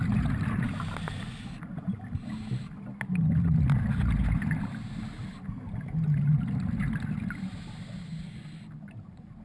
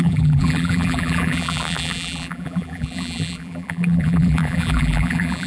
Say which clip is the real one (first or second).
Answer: first